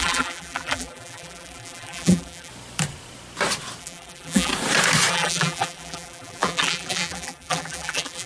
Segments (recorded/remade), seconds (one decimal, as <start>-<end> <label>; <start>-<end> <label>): 0.0-2.5 remade; 2.5-3.8 recorded; 3.8-4.5 remade; 4.5-5.1 recorded; 5.1-8.3 remade